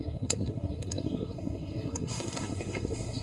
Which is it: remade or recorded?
remade